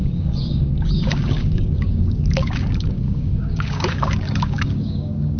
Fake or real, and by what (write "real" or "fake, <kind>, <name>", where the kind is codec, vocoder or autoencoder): fake, codec, DAC